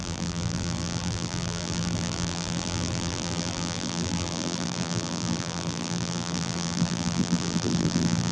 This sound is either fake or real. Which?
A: fake